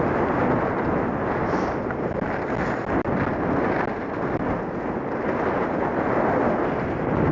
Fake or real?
real